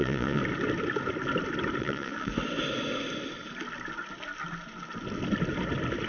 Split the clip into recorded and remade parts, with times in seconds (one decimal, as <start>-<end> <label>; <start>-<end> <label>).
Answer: 0.0-0.4 remade; 0.4-1.8 recorded; 1.8-2.3 remade; 2.3-6.1 recorded